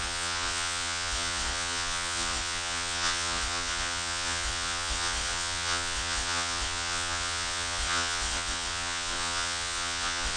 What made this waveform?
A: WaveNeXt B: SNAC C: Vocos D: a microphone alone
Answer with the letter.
C